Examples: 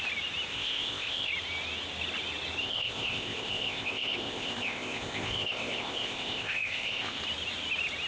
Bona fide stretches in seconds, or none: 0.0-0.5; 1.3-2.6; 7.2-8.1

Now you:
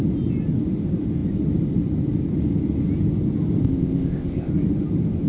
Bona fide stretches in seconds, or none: 0.0-3.6; 4.5-5.3

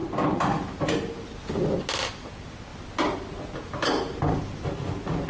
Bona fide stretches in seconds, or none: 0.0-5.3

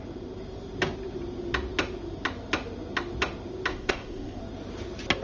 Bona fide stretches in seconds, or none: 0.0-3.7; 4.4-5.2

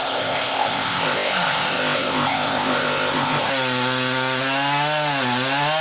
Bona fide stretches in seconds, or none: 3.5-5.8

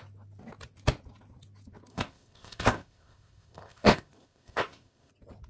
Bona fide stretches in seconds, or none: 0.0-1.9; 5.1-5.5

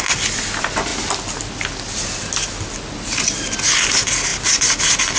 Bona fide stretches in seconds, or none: 0.0-5.2